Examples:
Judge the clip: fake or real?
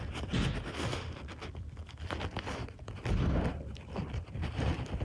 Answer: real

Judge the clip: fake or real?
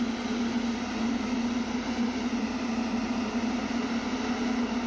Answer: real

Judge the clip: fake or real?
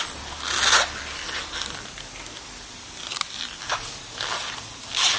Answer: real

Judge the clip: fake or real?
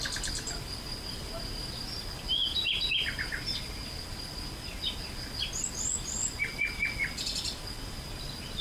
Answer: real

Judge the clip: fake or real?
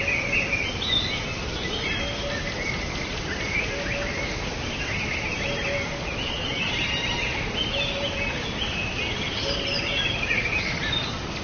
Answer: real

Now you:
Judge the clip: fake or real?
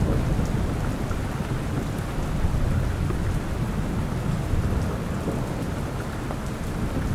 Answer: real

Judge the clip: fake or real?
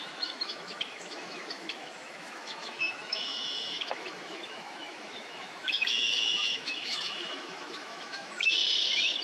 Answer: fake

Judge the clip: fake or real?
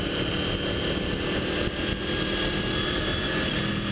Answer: real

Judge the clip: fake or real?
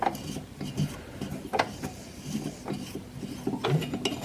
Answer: real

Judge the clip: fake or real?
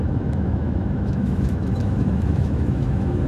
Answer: fake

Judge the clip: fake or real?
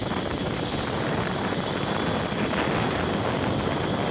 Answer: real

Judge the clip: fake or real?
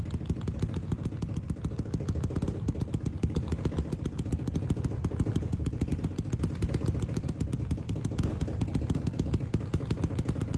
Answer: real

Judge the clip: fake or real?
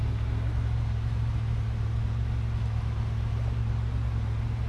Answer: real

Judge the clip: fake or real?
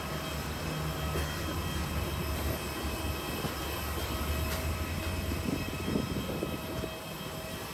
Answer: real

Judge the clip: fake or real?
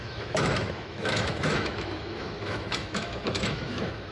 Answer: fake